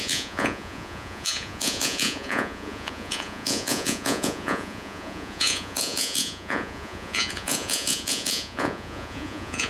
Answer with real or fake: fake